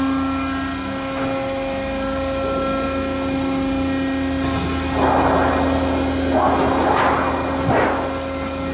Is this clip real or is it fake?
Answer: real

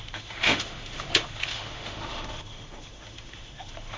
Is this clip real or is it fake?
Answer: fake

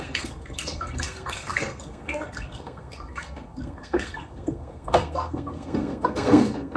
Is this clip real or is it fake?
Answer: fake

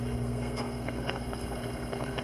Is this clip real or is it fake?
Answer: fake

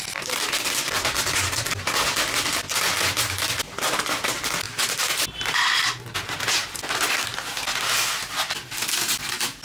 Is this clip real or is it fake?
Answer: real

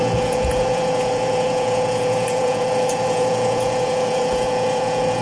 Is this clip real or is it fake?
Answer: fake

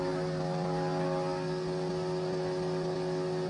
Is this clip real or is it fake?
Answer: real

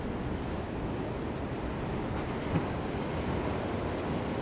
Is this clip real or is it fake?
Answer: real